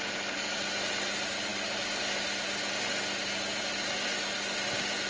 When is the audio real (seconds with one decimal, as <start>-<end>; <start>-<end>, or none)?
0.0-5.1